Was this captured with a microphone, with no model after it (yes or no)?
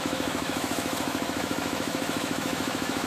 no